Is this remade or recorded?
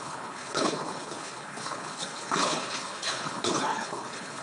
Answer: remade